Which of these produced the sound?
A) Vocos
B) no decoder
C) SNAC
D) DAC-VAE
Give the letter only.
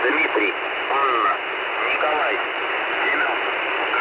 B